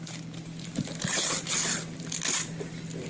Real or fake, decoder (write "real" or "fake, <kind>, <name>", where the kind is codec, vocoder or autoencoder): real